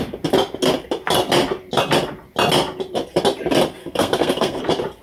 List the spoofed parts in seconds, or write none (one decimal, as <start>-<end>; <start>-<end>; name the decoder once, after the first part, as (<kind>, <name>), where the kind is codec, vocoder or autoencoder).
3.8-4.6 (codec, SNAC)